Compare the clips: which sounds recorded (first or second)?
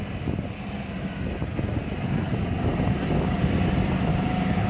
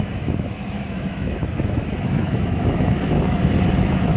first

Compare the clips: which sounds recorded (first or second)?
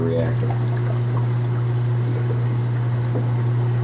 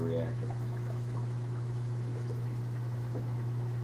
first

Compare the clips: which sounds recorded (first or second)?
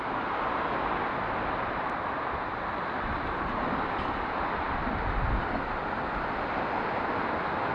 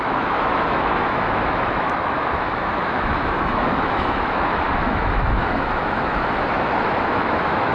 first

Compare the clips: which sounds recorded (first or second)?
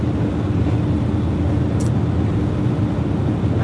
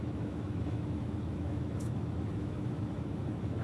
first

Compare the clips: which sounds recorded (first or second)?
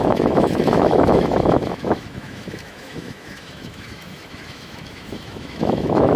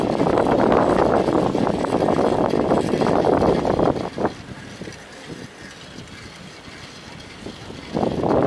second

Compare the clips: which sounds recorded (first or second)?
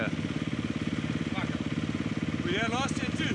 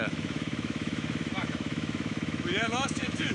first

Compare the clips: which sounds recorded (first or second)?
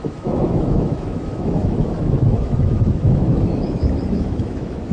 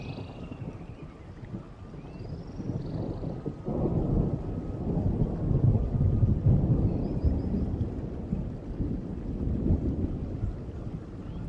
second